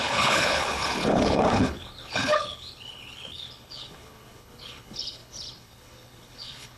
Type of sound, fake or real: fake